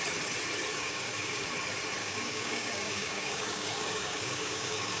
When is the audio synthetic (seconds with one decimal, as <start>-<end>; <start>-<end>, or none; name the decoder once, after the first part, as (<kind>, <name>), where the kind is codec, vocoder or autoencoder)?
0.7-1.5 (codec, DAC); 2.0-5.0